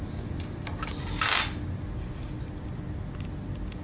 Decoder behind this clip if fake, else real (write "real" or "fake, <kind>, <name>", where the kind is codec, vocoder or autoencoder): real